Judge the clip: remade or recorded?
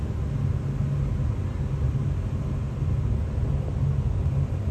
recorded